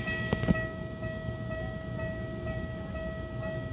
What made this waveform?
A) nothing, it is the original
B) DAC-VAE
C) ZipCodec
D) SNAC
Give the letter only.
A